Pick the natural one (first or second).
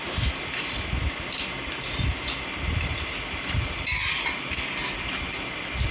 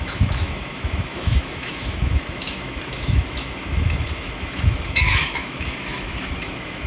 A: first